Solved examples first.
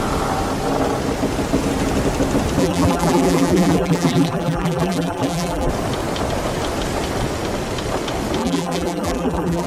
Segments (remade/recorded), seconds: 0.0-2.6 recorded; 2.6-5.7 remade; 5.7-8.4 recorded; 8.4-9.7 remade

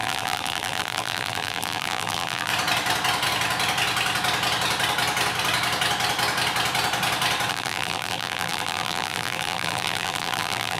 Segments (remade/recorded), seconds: 0.0-2.5 remade; 2.5-7.5 recorded; 7.5-10.8 remade